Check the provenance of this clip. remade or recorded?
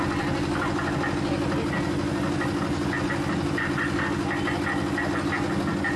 recorded